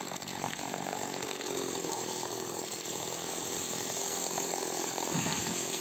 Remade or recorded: remade